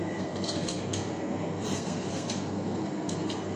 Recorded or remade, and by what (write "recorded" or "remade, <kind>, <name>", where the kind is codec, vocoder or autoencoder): remade, codec, SNAC